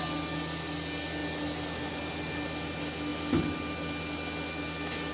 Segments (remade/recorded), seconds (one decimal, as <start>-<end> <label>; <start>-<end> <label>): 0.0-5.1 recorded

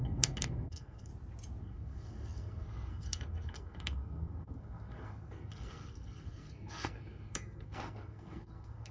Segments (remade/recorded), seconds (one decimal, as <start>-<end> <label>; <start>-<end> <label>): 0.0-1.1 remade; 1.1-1.6 recorded; 1.6-8.9 remade

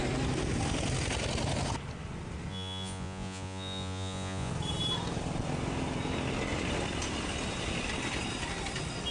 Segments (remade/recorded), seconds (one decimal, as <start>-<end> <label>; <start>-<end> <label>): 0.0-2.5 recorded; 2.5-4.5 remade; 4.5-9.1 recorded

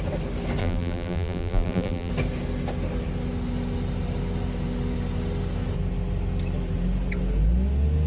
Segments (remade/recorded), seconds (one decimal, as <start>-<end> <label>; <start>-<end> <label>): 0.0-0.6 recorded; 0.6-2.1 remade; 2.1-8.1 recorded

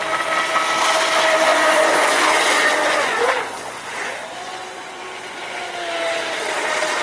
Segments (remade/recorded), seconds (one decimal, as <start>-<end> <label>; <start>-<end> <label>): 0.0-1.5 recorded; 1.5-5.7 remade; 5.7-7.0 recorded

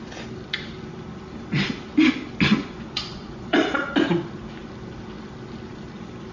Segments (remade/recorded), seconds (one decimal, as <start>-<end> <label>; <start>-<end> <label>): 0.0-2.5 recorded; 2.5-3.6 remade; 3.6-6.3 recorded